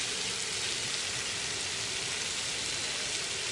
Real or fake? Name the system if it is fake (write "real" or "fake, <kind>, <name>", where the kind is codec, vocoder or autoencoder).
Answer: real